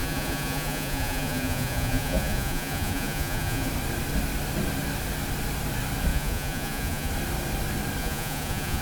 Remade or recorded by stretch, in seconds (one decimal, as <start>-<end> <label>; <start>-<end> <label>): 0.0-3.7 remade; 3.7-6.1 recorded; 6.1-7.1 remade; 7.1-8.0 recorded; 8.0-8.8 remade

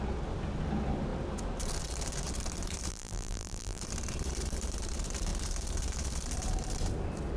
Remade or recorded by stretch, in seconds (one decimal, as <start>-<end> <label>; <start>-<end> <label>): 0.0-2.9 recorded; 2.9-3.8 remade; 3.8-7.4 recorded

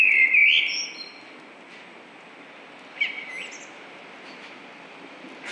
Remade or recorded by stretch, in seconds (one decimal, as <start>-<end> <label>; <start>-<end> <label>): 0.0-5.5 recorded

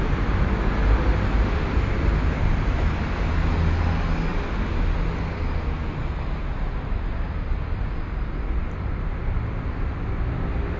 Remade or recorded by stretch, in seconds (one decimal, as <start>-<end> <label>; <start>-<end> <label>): 0.0-10.8 recorded

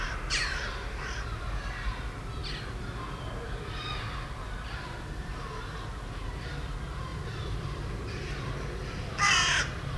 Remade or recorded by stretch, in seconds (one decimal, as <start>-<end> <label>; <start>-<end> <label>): 0.0-7.1 recorded; 7.1-8.4 remade; 8.4-10.0 recorded

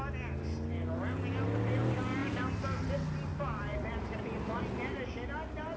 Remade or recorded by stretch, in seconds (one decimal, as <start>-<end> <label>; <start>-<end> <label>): 0.0-2.2 recorded; 2.2-2.9 remade; 2.9-3.3 recorded; 3.3-4.6 remade; 4.6-5.8 recorded